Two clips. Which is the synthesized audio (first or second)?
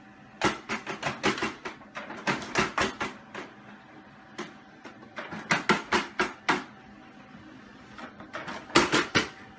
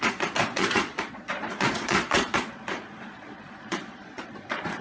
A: second